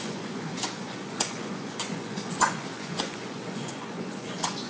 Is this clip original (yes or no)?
no